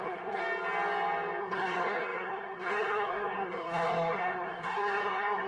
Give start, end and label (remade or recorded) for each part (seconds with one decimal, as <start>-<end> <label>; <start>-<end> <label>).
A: 0.0-0.4 remade; 0.4-1.4 recorded; 1.4-5.5 remade